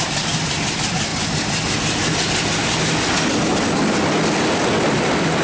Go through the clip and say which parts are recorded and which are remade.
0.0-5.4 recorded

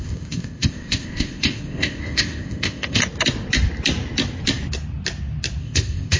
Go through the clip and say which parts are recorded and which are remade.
0.0-3.0 remade; 3.0-5.6 recorded; 5.6-6.2 remade

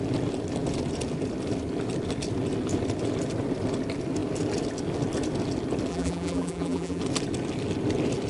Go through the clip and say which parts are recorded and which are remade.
0.0-5.9 recorded; 5.9-7.0 remade; 7.0-8.3 recorded

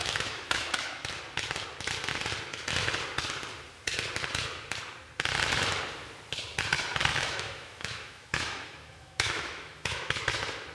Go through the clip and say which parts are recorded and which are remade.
0.0-1.1 remade; 1.1-7.1 recorded; 7.1-10.1 remade; 10.1-10.7 recorded

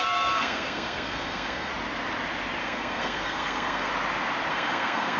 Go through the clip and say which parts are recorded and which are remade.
0.0-1.7 remade; 1.7-2.6 recorded; 2.6-3.9 remade; 3.9-4.5 recorded; 4.5-5.2 remade

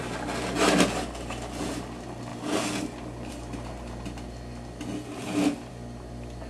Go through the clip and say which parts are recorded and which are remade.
0.0-6.5 recorded

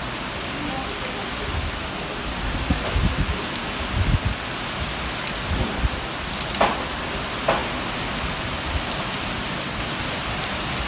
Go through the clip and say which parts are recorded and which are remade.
0.0-10.9 recorded

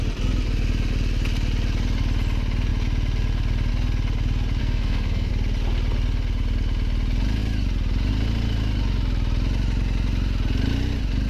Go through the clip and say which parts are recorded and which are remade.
0.0-4.6 recorded; 4.6-5.3 remade; 5.3-11.3 recorded